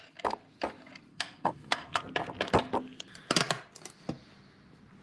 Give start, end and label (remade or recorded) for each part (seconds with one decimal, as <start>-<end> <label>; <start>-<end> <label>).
0.0-1.1 recorded; 1.1-2.0 remade; 2.0-5.0 recorded

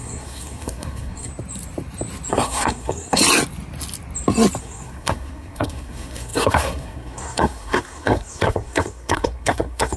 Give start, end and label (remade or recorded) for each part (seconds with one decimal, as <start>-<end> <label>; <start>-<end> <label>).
0.0-1.3 remade; 1.3-2.3 recorded; 2.3-3.2 remade; 3.2-4.6 recorded; 4.6-10.0 remade

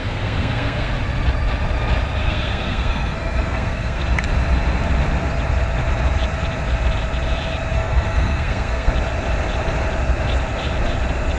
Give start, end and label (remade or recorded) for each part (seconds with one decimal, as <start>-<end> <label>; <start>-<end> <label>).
0.0-0.9 remade; 0.9-2.2 recorded; 2.2-4.0 remade; 4.0-7.7 recorded; 7.7-8.9 remade; 8.9-11.4 recorded

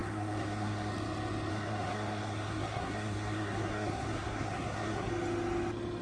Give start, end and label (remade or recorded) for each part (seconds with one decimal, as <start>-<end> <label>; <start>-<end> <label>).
0.0-0.9 remade; 0.9-1.5 recorded; 1.5-5.1 remade; 5.1-6.0 recorded

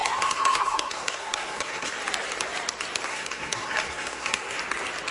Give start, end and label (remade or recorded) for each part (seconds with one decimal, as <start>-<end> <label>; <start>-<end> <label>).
0.0-1.9 remade; 1.9-3.1 recorded; 3.1-4.6 remade; 4.6-5.1 recorded

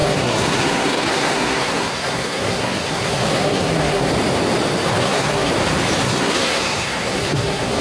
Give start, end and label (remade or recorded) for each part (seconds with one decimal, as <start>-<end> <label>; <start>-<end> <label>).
0.0-4.1 remade; 4.1-5.0 recorded; 5.0-5.5 remade; 5.5-6.0 recorded; 6.0-7.8 remade